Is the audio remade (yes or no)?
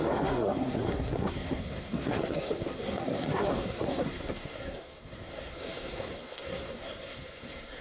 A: yes